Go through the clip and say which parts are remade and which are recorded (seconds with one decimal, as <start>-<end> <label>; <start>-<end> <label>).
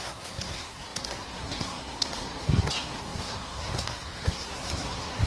0.0-5.3 remade